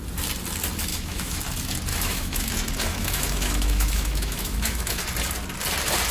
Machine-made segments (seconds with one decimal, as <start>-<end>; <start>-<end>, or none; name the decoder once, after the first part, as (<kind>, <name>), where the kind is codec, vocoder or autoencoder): 0.9-1.4 (autoencoder, DAC-VAE); 1.9-2.5; 2.9-5.0